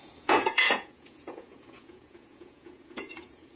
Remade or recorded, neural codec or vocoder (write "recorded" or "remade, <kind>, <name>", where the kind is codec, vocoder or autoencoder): remade, vocoder, Vocos